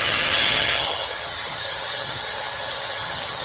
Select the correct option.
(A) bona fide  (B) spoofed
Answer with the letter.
B